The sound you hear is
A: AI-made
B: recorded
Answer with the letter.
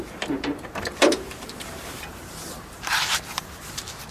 A